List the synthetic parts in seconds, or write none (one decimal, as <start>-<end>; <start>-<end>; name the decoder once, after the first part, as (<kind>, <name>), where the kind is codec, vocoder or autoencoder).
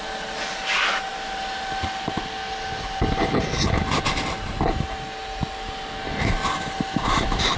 none